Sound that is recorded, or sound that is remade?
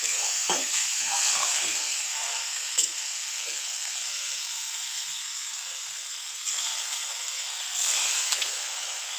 remade